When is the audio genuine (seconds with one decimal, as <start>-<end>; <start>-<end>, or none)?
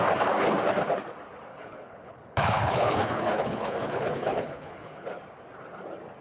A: 0.0-1.5; 5.2-6.2